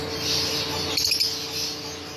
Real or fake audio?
real